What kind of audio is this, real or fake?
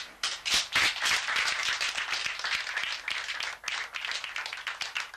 real